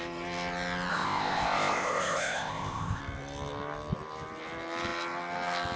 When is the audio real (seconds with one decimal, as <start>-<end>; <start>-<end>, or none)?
0.0-0.9; 3.0-5.8